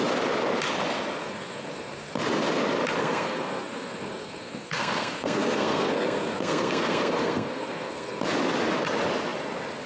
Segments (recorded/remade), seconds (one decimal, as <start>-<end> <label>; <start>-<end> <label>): 0.0-1.2 recorded; 1.2-2.1 remade; 2.1-3.0 recorded; 3.0-8.2 remade; 8.2-9.9 recorded